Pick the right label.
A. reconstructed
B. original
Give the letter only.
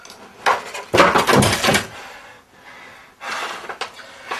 B